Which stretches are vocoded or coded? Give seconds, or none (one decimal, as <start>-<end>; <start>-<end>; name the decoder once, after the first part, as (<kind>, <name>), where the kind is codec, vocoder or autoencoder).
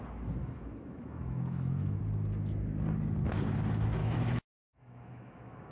0.4-2.0 (autoencoder, DAC-VAE); 4.0-5.7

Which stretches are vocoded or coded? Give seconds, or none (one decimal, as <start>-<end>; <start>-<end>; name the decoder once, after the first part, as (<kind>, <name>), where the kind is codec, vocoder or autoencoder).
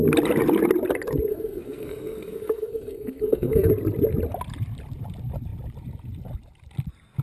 1.3-3.7 (codec, SNAC)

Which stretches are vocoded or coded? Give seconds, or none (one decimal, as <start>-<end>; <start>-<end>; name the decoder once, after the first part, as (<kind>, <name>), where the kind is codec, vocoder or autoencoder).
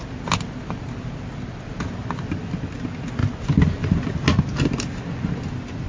none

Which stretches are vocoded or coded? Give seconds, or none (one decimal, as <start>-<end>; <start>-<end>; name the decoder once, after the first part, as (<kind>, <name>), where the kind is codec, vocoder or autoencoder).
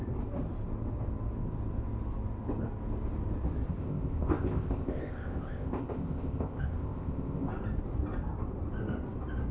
3.8-7.5 (codec, ZipCodec)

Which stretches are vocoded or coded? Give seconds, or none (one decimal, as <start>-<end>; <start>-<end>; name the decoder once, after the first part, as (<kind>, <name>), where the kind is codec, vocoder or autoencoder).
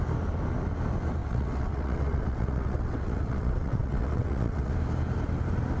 1.2-4.7 (vocoder, WaveNeXt)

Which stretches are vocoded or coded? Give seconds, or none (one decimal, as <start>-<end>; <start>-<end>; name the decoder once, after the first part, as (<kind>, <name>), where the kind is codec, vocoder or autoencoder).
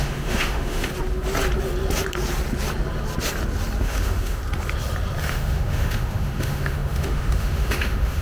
0.0-0.9 (autoencoder, DAC-VAE); 3.8-4.4; 5.2-8.2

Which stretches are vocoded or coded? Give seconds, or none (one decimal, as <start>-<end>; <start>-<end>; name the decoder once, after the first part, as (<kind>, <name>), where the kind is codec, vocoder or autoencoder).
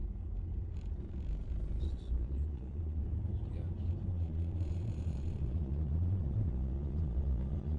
1.8-3.0 (vocoder, Vocos); 4.1-7.8